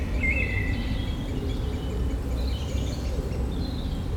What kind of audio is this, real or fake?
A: real